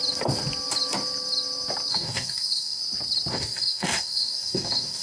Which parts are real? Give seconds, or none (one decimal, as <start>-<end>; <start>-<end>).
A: 0.0-1.9; 2.8-3.3